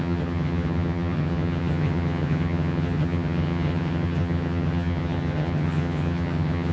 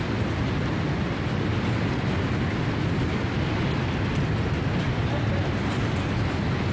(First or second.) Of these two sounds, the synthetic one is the first